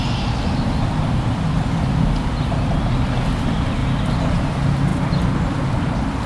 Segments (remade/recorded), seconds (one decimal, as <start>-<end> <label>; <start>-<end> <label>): 0.0-6.3 recorded